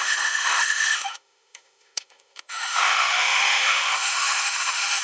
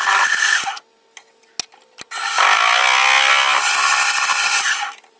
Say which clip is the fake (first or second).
first